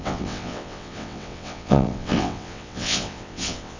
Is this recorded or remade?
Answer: remade